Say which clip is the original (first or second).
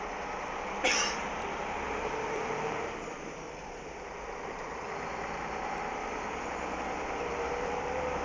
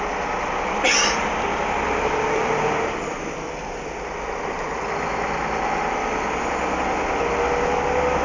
second